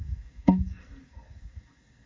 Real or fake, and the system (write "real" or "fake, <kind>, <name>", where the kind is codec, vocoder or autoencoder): fake, codec, SNAC